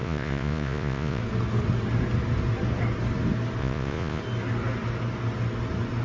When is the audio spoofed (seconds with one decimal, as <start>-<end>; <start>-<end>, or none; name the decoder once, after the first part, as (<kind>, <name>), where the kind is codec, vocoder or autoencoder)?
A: 0.0-1.2 (vocoder, Vocos); 3.6-4.2